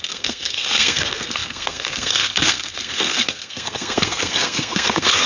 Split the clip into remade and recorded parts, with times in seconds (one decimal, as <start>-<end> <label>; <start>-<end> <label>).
0.0-5.3 remade